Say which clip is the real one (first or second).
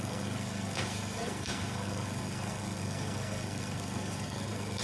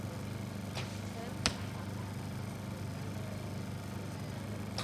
second